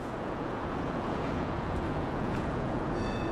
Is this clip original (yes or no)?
no